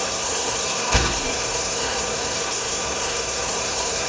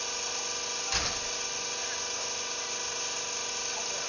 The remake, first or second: first